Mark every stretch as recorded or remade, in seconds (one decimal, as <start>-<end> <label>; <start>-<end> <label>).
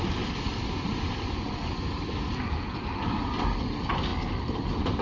0.0-5.0 recorded